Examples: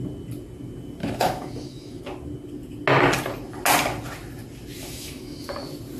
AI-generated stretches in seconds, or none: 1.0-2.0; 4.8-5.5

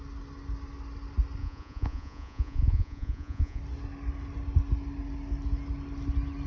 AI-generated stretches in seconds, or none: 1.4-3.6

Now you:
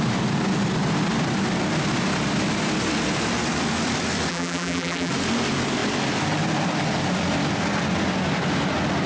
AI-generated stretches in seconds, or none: 4.3-5.1

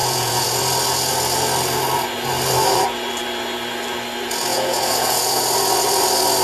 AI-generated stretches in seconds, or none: 0.0-0.6; 4.5-5.4

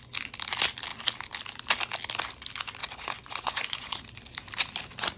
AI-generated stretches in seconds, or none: 2.8-4.0

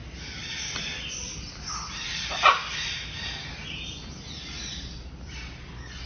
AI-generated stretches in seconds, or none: none

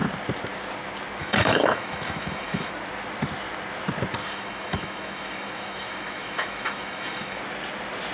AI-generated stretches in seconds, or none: 1.2-2.7; 4.2-7.4

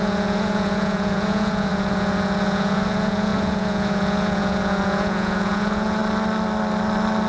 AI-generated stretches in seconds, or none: 0.0-6.0